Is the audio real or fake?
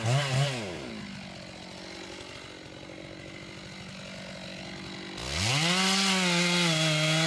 real